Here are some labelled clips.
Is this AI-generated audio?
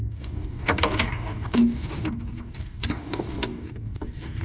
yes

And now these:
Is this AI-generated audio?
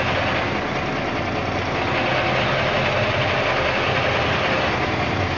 no